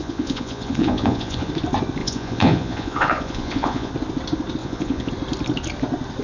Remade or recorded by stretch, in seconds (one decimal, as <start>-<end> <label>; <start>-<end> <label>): 0.0-1.5 remade; 1.5-2.0 recorded; 2.0-3.9 remade; 3.9-4.6 recorded; 4.6-5.1 remade; 5.1-6.2 recorded